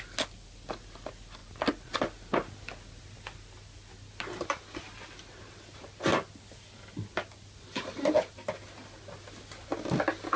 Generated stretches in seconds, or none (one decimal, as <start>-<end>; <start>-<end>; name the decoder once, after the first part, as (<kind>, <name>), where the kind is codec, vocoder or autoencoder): none